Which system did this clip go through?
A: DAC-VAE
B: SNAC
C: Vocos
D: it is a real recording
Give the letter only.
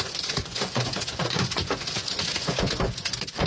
C